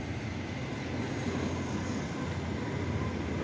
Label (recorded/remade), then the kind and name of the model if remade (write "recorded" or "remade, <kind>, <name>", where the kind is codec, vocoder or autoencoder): recorded